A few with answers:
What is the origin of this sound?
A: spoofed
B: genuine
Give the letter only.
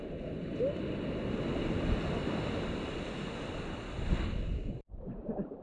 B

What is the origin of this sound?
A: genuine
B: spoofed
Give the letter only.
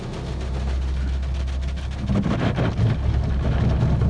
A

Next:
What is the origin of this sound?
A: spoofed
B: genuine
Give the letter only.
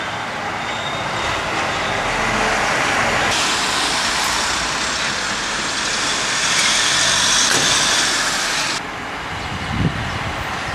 B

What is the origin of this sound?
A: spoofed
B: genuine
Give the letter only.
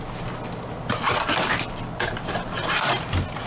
B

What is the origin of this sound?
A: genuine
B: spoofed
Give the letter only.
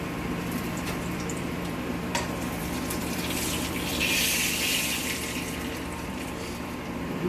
B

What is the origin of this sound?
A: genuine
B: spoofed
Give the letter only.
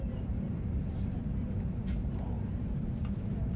B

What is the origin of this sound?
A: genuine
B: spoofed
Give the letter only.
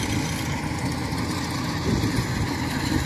A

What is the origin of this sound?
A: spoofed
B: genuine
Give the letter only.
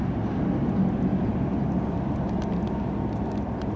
B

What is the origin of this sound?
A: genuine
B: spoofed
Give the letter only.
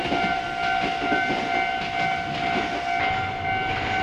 A